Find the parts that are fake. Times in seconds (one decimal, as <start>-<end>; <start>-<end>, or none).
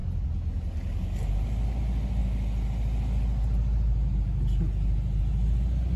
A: none